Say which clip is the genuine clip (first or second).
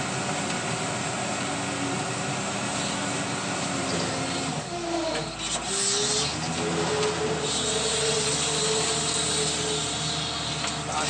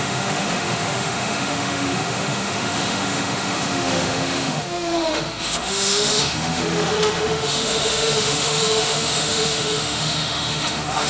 first